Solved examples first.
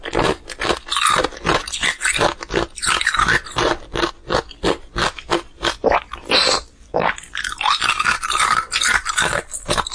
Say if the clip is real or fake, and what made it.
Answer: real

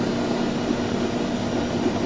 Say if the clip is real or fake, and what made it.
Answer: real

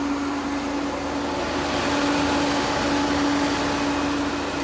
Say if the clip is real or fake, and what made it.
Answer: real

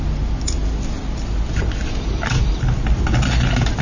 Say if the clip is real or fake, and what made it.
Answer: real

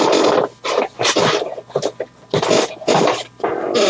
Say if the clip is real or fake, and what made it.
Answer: real